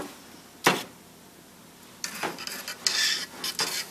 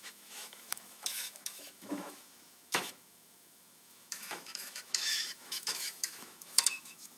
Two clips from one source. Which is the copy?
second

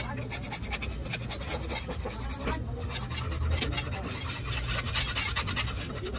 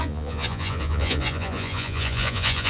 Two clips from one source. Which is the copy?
second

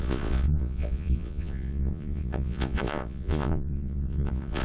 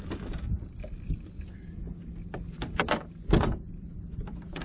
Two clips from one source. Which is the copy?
first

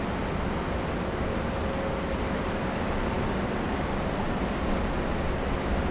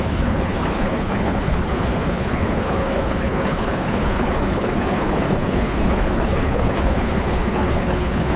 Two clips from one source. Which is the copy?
second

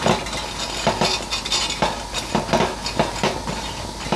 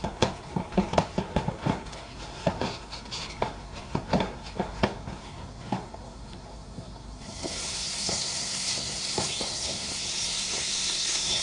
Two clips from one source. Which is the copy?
second